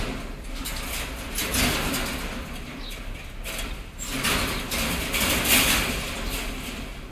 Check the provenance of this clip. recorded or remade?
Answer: recorded